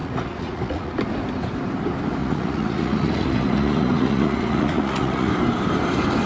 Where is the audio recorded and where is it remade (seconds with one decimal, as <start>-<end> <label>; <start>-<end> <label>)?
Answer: 0.0-0.9 remade; 0.9-2.2 recorded; 2.2-5.3 remade; 5.3-6.3 recorded